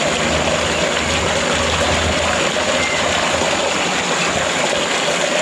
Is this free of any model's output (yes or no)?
yes